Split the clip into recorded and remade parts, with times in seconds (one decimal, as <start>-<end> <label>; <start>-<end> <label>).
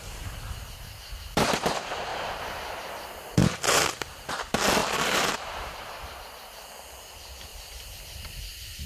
0.0-2.1 recorded; 2.1-4.3 remade; 4.3-4.8 recorded; 4.8-6.2 remade; 6.2-7.5 recorded; 7.5-8.2 remade; 8.2-8.9 recorded